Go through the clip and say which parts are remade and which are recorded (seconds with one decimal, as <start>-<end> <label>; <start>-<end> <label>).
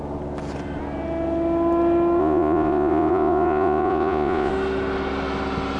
0.0-2.2 recorded; 2.2-4.5 remade; 4.5-5.8 recorded